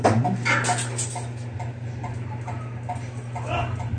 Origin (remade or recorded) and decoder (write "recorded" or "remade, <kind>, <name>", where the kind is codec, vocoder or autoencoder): recorded